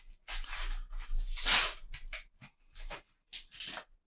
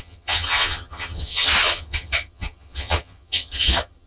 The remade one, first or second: second